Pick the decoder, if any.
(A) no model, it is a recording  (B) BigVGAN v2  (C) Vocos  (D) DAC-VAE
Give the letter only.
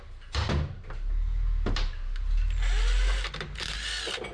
A